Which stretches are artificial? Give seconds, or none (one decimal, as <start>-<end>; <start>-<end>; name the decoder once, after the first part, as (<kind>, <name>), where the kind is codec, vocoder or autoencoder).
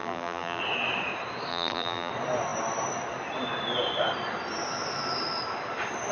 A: 0.0-0.6 (vocoder, BigVGAN v2); 1.5-2.1